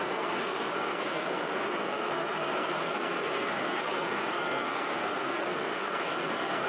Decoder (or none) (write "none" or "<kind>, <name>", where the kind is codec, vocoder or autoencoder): codec, SNAC